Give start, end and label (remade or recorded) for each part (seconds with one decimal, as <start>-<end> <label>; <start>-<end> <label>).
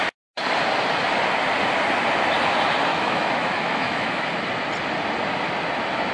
0.0-2.9 recorded; 2.9-4.3 remade; 4.3-6.1 recorded